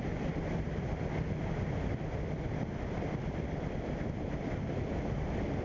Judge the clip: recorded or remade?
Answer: recorded